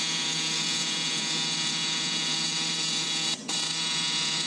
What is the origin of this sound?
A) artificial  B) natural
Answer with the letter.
A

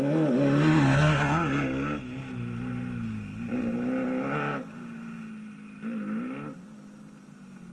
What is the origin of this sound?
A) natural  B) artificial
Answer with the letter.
A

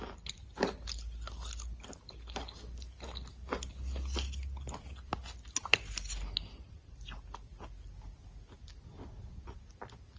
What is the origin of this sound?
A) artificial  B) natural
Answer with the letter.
B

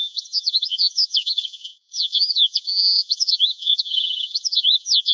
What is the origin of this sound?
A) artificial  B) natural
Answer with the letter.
A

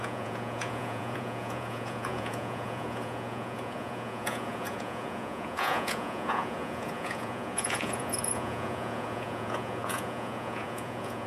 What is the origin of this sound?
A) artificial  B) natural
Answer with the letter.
A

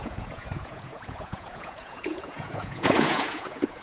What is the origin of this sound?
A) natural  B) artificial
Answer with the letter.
B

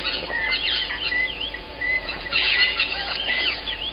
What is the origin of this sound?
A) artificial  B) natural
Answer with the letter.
A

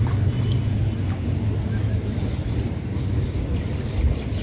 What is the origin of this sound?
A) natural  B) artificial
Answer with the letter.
A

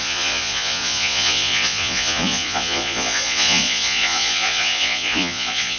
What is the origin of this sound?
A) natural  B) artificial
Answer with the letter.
B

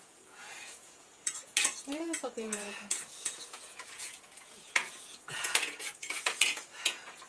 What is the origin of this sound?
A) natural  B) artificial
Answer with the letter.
B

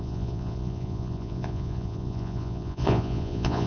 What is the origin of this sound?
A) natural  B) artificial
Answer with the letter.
B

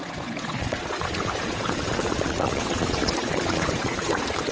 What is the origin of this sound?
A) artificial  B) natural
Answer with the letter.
A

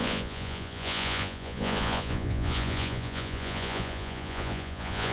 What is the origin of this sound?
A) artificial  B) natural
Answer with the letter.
A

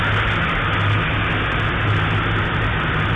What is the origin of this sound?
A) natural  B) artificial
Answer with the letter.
A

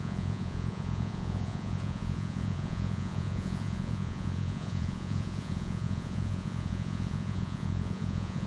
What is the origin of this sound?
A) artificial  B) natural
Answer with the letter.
A